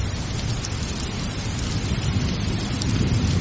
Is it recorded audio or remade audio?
recorded